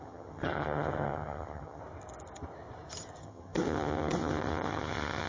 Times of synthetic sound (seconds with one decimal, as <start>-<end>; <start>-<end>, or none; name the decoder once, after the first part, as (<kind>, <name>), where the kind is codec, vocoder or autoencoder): 0.0-1.8 (vocoder, HiFi-GAN); 3.2-5.3